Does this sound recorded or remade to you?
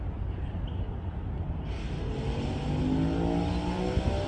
recorded